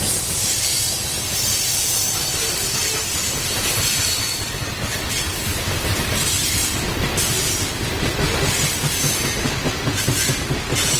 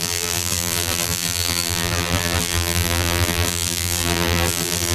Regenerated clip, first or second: second